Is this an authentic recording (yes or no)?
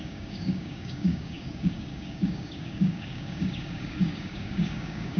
no